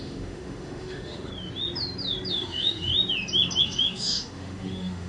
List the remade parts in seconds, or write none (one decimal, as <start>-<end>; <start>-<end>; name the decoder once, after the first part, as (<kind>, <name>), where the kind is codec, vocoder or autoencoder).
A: 0.0-1.3 (autoencoder, DAC-VAE); 2.3-2.9; 3.6-5.1